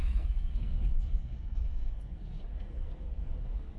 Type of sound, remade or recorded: remade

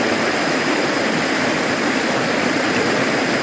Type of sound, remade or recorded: recorded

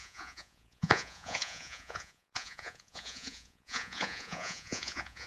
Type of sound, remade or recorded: remade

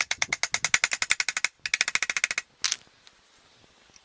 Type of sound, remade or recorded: recorded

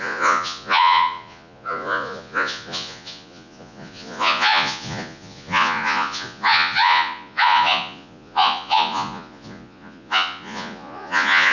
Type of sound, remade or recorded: remade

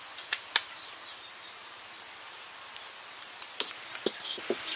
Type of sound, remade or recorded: recorded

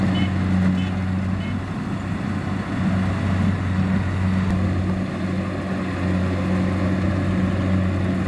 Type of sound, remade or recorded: recorded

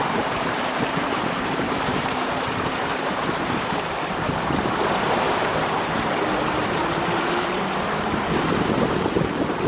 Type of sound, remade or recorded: remade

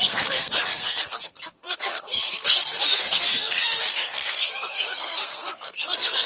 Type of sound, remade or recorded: remade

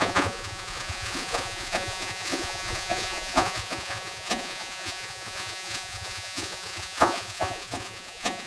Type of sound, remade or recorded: remade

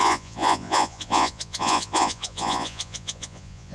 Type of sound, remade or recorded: remade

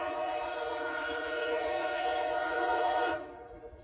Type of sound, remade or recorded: remade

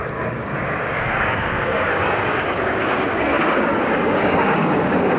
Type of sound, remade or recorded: remade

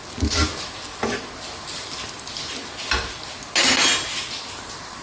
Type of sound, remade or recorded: recorded